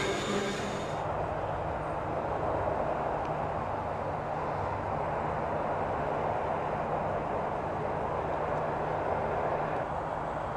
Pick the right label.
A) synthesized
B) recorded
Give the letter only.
B